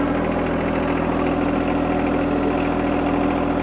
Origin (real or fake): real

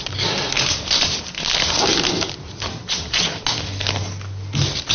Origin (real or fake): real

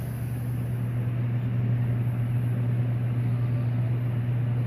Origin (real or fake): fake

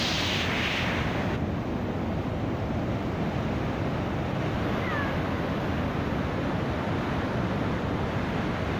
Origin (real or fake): real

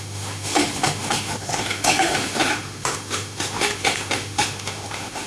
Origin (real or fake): fake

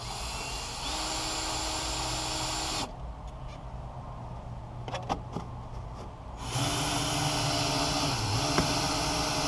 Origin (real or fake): real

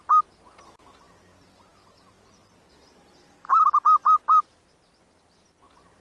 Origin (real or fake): real